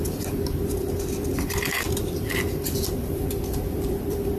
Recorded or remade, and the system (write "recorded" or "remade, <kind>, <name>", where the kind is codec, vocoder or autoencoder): remade, vocoder, BigVGAN v2